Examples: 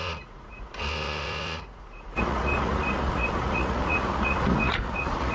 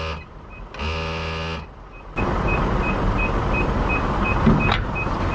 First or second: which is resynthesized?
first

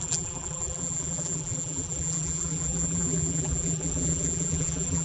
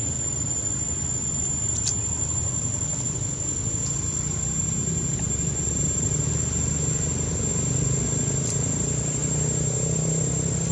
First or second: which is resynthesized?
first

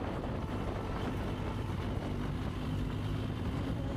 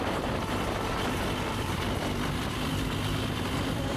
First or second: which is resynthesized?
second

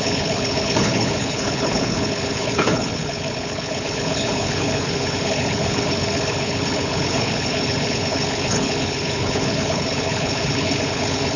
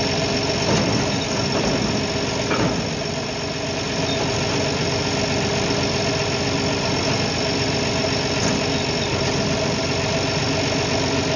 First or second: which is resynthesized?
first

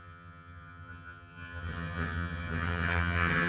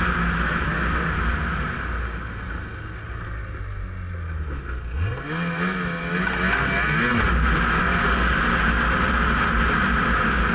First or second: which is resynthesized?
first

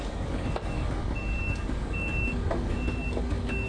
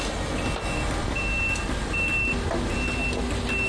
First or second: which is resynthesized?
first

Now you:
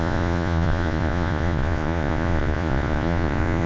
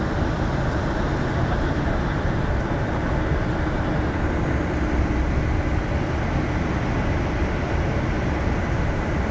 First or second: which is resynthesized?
first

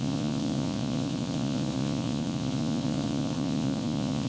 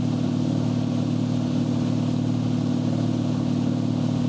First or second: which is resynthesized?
first